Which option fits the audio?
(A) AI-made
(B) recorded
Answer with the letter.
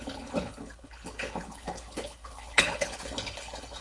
A